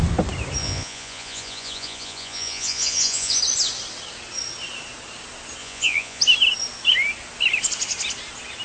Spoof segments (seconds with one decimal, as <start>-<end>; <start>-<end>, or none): 0.6-3.4; 5.6-6.2